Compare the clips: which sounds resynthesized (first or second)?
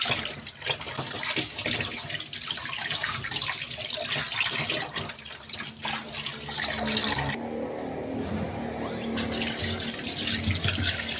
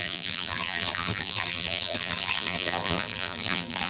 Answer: second